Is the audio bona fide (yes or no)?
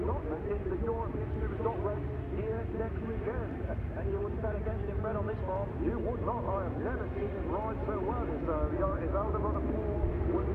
yes